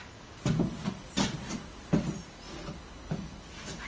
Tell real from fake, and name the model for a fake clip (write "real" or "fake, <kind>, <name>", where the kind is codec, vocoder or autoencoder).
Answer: real